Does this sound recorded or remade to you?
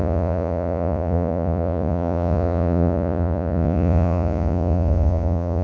remade